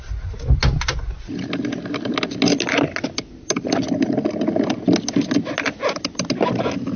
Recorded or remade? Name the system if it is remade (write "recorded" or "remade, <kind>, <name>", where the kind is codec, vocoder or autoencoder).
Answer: recorded